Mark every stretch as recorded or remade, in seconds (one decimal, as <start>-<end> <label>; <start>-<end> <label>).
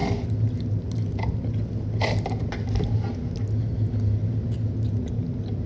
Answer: 0.0-5.7 recorded